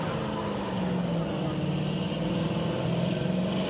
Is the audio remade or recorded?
recorded